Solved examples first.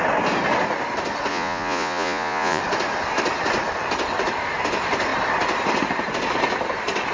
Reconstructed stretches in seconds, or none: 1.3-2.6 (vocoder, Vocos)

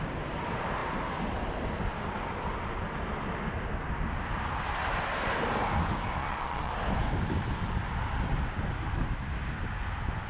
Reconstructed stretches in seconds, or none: 6.2-6.7 (vocoder, Vocos)

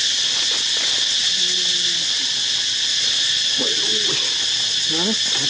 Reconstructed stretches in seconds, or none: none

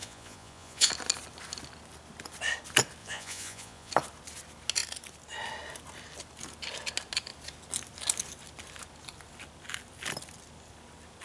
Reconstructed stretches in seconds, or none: 0.0-0.9 (vocoder, Vocos); 3.0-3.9

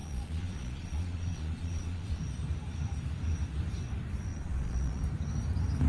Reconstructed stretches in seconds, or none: 0.0-2.2 (vocoder, Vocos); 4.3-5.0

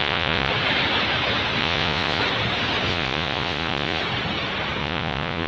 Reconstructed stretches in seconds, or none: 0.0-0.5 (vocoder, Vocos); 1.6-2.2; 2.9-4.0; 4.8-5.5